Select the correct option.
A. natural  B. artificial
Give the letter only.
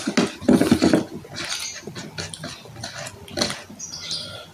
A